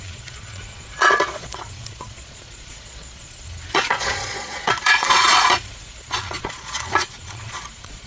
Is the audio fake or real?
fake